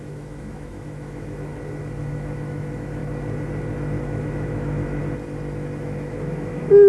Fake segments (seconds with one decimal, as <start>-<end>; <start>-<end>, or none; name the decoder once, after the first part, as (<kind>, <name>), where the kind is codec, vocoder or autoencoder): 0.0-1.5 (autoencoder, DAC-VAE); 2.1-3.0; 4.0-5.0; 5.8-6.9